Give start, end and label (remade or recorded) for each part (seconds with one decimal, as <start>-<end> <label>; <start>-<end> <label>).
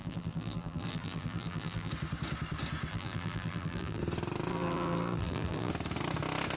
0.0-1.9 remade; 1.9-2.9 recorded; 2.9-4.0 remade; 4.0-4.5 recorded; 4.5-5.7 remade; 5.7-6.6 recorded